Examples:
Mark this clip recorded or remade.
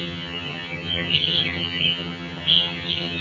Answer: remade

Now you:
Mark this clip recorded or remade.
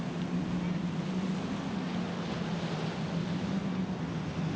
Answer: recorded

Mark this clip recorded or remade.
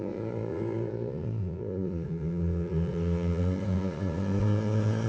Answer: remade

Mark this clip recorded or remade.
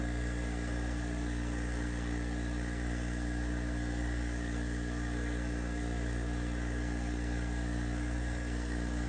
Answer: remade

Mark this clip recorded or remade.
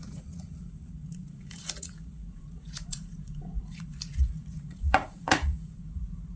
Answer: remade